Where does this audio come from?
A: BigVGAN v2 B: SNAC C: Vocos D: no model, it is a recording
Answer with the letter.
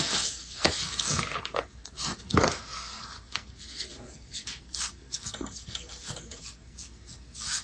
B